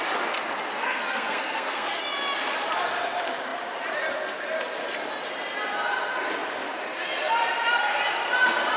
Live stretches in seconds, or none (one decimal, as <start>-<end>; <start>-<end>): 0.0-0.8; 2.0-8.8